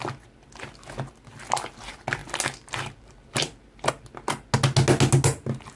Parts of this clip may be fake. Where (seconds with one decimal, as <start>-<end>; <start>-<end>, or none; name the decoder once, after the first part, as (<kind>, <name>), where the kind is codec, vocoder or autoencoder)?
2.2-3.9 (vocoder, BigVGAN v2)